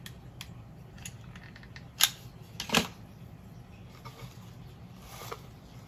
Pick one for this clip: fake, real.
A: real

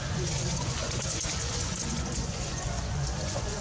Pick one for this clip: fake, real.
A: fake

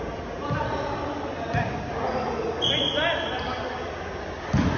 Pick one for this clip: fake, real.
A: real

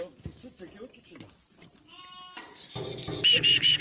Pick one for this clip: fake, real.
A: real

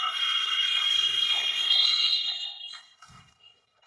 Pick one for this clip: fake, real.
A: fake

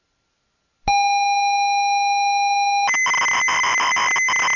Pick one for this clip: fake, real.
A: real